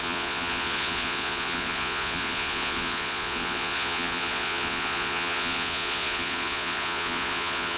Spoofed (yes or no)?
yes